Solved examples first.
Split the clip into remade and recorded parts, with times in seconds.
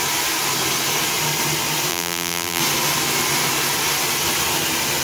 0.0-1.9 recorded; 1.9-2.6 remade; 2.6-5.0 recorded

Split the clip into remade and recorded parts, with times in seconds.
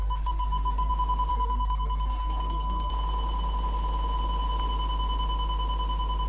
0.0-0.9 remade; 0.9-1.3 recorded; 1.3-2.9 remade; 2.9-6.3 recorded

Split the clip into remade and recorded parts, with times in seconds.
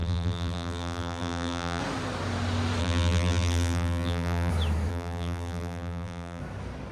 0.0-1.8 remade; 1.8-2.8 recorded; 2.8-4.5 remade; 4.5-4.9 recorded; 4.9-6.4 remade; 6.4-6.9 recorded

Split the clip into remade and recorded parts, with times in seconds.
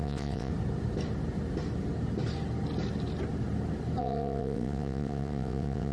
0.0-0.5 remade; 0.5-4.0 recorded; 4.0-5.9 remade